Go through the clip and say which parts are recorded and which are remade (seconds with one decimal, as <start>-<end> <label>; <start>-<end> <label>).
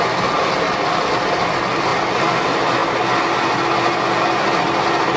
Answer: 0.0-5.2 recorded